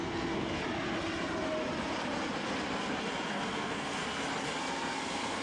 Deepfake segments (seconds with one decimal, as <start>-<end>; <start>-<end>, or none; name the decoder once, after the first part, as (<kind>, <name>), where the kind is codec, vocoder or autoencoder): 0.0-0.6 (codec, SNAC); 3.3-4.0; 4.6-5.4